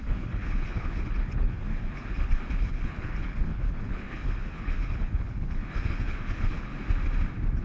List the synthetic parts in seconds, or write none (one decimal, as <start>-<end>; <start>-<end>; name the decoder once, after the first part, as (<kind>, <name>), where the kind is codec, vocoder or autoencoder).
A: 0.0-6.7 (codec, HILCodec)